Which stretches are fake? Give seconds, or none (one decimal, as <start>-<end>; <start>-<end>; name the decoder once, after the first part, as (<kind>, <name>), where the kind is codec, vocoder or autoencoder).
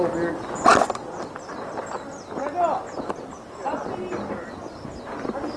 none